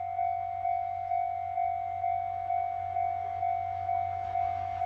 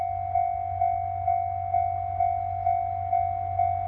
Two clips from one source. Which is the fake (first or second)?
first